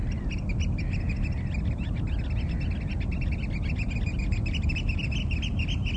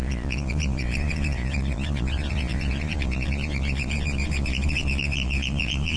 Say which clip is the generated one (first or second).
second